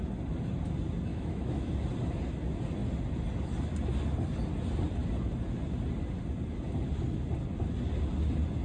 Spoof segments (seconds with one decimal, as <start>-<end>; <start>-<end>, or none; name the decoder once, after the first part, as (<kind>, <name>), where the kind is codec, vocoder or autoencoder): 1.1-1.7 (autoencoder, DAC-VAE)

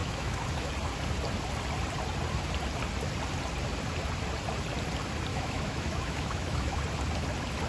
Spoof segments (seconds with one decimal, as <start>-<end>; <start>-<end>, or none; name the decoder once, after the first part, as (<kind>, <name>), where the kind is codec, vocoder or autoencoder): 0.0-0.7 (autoencoder, DAC-VAE); 5.3-6.8

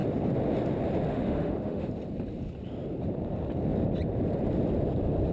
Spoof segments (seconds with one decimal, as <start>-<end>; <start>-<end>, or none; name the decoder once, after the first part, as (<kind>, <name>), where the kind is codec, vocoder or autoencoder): 1.1-1.9 (autoencoder, DAC-VAE)

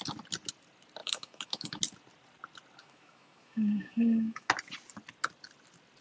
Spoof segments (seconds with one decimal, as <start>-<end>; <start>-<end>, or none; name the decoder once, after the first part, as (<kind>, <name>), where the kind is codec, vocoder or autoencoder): 1.0-1.8 (autoencoder, DAC-VAE); 2.8-4.5

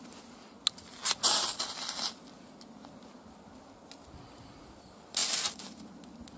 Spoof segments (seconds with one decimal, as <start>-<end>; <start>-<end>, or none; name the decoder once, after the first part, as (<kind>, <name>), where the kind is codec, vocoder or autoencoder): none